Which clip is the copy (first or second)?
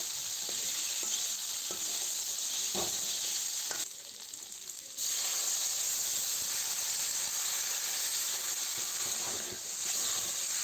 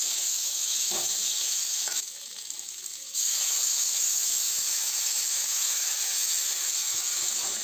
second